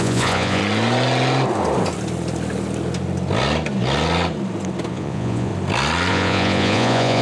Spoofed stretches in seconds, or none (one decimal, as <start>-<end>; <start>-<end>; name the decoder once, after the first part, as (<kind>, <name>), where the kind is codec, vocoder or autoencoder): 0.0-0.6 (vocoder, Vocos); 4.9-5.5; 6.1-7.2

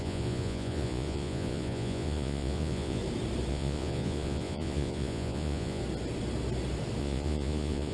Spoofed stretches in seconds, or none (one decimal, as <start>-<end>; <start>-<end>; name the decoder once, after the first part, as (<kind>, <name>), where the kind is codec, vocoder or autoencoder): 0.0-3.0 (vocoder, Vocos); 3.5-5.8; 7.0-7.9

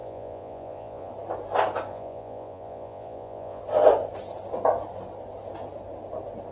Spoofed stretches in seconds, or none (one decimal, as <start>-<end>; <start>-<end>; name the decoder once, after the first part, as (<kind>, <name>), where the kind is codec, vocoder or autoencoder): 0.0-1.1 (vocoder, Vocos); 1.9-3.6

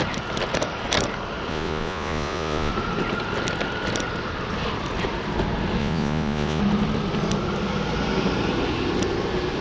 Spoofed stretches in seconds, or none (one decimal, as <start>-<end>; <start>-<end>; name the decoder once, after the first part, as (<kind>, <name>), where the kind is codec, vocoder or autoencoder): 1.5-2.7 (vocoder, Vocos); 5.8-6.6

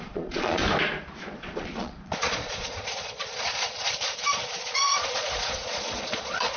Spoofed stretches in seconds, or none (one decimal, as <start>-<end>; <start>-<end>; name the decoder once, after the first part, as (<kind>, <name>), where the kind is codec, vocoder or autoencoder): 0.0-0.6 (vocoder, Vocos); 1.2-6.6

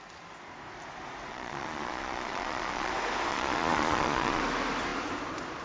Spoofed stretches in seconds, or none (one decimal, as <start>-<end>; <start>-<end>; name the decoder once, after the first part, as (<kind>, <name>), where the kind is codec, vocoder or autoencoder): 1.3-2.9 (vocoder, Vocos); 3.3-4.4